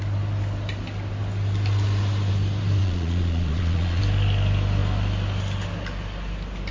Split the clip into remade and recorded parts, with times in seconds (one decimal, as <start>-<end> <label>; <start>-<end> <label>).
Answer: 0.0-2.8 recorded; 2.8-4.0 remade; 4.0-6.7 recorded